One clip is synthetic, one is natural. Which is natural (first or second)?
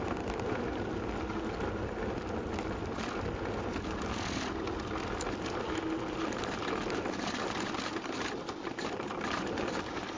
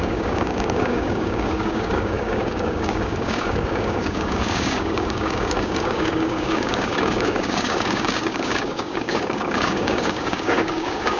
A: first